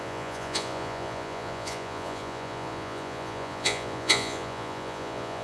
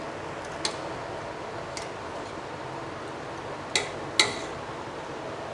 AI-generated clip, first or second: first